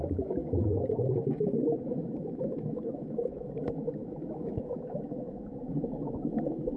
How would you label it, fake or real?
fake